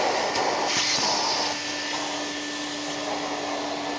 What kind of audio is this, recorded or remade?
recorded